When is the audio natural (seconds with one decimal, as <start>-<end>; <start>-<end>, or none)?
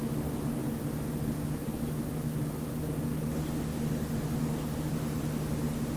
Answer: 0.0-6.0